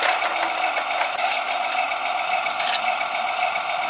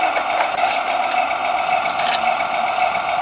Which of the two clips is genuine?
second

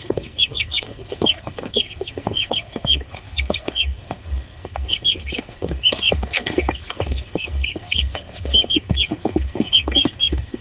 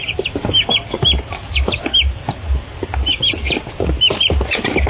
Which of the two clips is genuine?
second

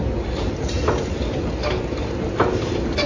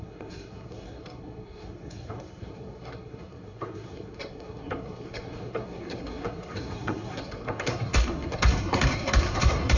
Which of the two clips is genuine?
first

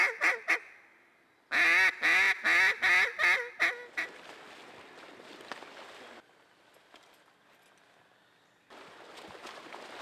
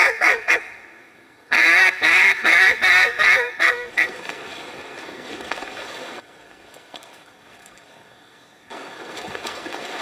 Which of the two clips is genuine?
first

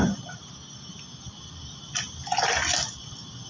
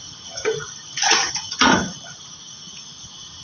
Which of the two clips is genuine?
first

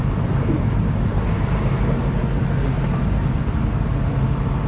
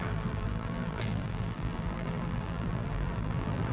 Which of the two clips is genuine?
first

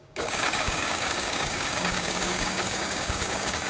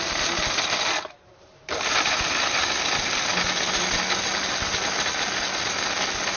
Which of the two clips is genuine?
second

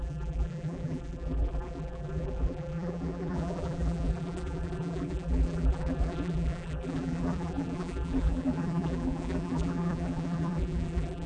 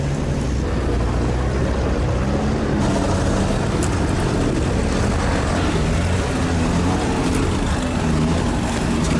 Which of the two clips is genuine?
second